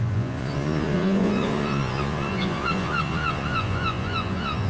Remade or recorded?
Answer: remade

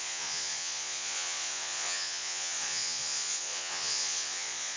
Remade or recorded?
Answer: remade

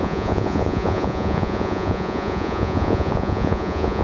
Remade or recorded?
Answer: remade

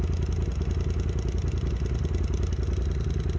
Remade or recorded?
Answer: recorded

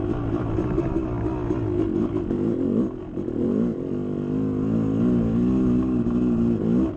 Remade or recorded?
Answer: recorded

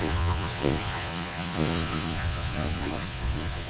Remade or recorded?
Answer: remade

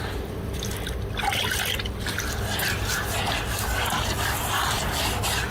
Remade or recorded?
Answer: recorded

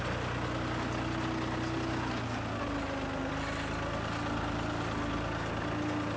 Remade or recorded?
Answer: recorded